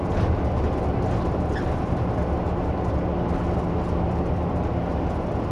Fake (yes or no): no